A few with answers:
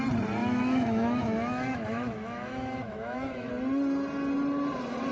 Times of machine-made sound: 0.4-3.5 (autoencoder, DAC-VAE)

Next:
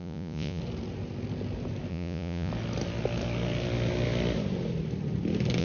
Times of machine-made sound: 0.0-0.6 (vocoder, Vocos); 1.9-2.5